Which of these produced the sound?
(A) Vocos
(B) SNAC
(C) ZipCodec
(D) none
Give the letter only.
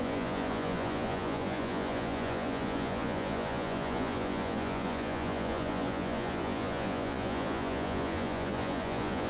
A